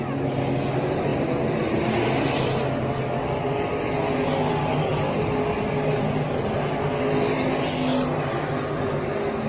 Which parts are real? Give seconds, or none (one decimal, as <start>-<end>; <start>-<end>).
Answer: 0.0-9.5